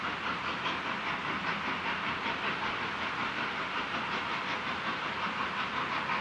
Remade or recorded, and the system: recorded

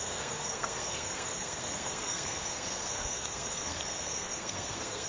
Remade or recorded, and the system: remade, codec, SNAC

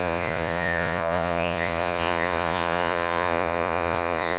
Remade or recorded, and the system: remade, vocoder, Vocos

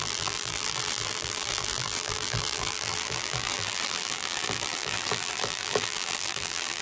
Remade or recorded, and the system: remade, vocoder, BigVGAN v2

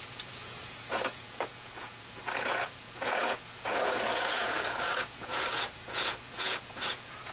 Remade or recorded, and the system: remade, vocoder, Vocos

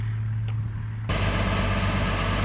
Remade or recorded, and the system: recorded